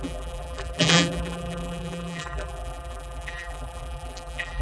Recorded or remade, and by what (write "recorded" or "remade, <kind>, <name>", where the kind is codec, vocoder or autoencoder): remade, vocoder, BigVGAN v2